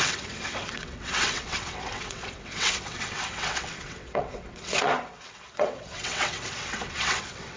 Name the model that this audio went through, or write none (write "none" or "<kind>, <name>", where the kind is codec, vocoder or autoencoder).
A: vocoder, WaveNeXt